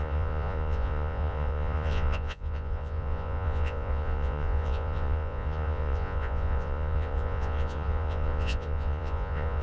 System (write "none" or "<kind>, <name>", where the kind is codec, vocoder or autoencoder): vocoder, Vocos